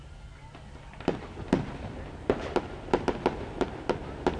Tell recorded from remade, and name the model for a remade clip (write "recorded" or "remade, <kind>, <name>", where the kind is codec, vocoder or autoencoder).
recorded